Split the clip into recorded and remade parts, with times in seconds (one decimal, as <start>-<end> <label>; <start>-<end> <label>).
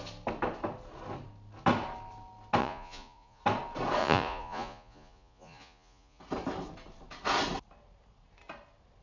0.0-2.6 recorded; 2.6-3.4 remade; 3.4-4.0 recorded; 4.0-6.2 remade; 6.2-9.0 recorded